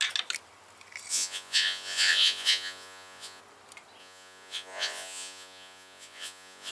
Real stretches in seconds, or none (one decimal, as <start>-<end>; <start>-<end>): 0.0-1.1; 3.4-4.0